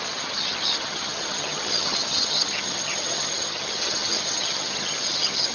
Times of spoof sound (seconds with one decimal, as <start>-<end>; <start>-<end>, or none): 0.0-5.5